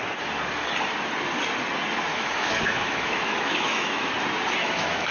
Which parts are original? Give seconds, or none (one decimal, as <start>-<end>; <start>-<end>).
0.0-2.1; 4.1-4.6